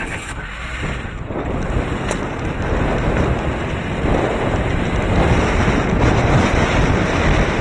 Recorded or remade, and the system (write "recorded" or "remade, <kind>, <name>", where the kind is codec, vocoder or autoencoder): recorded